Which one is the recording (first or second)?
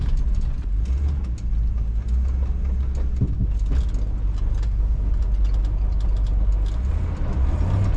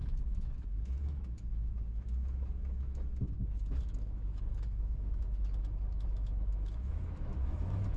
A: first